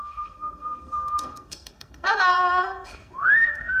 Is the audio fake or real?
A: fake